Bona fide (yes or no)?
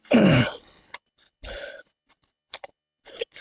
no